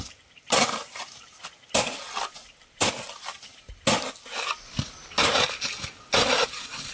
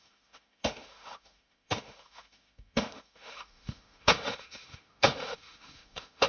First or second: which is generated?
second